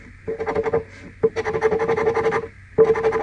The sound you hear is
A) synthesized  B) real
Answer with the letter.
B